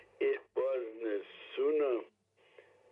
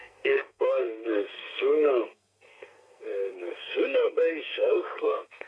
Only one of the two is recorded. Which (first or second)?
first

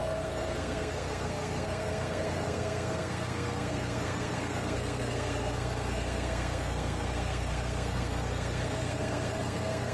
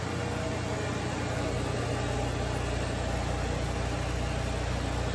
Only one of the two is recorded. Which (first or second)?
second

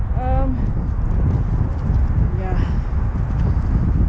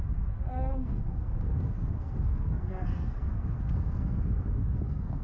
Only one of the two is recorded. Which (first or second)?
first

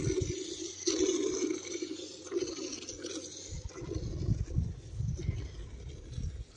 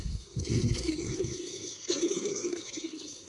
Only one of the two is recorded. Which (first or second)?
first